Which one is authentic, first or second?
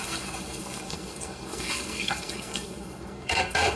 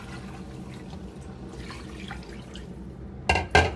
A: second